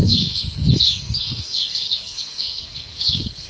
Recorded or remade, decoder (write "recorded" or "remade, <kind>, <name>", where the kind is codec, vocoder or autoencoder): remade, codec, SNAC